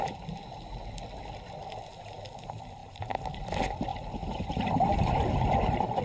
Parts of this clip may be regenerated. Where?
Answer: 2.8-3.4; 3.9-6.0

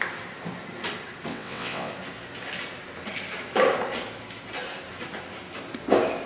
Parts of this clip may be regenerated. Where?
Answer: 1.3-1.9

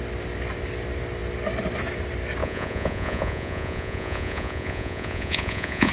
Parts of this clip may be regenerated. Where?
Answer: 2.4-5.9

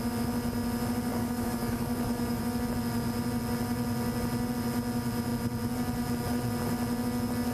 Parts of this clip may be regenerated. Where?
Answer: 1.1-2.4